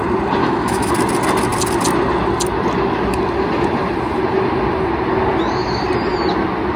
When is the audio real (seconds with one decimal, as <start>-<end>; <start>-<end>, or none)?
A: 0.0-0.4; 0.9-6.8